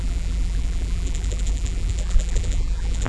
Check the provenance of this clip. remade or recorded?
remade